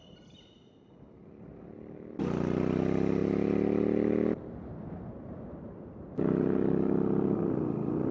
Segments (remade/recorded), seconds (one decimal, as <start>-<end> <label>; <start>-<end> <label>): 0.0-8.1 recorded